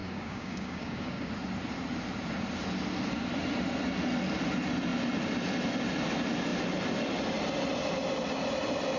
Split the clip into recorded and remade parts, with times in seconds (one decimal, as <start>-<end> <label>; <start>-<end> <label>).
0.0-1.3 remade; 1.3-9.0 recorded